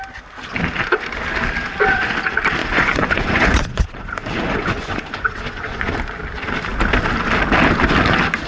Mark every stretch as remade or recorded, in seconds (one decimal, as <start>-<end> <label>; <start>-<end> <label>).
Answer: 0.0-2.6 recorded; 2.6-6.0 remade; 6.0-8.5 recorded